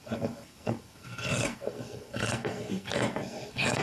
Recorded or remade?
remade